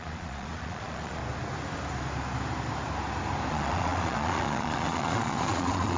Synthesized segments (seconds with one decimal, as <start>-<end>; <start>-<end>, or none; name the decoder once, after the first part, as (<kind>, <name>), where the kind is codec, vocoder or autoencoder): 0.0-1.2 (vocoder, Vocos); 3.5-6.0